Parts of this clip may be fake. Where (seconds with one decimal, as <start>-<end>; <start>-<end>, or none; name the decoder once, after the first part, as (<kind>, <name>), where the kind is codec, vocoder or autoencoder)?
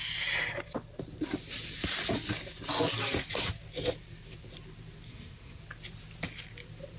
5.1-5.6 (codec, SNAC)